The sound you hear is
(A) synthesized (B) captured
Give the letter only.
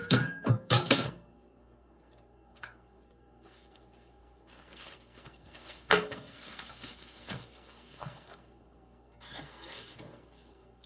A